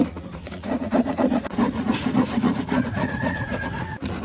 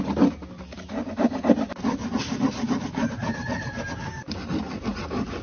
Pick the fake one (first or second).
first